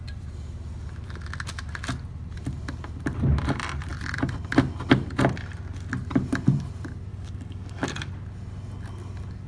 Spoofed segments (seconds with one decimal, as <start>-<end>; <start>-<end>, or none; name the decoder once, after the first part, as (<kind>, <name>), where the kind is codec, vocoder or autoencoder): 7.1-8.1 (codec, DAC)